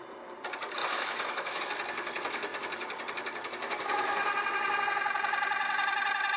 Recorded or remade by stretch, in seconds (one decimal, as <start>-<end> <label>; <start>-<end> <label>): 0.0-0.8 recorded; 0.8-1.6 remade; 1.6-6.4 recorded